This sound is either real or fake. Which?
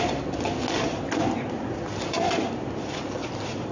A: real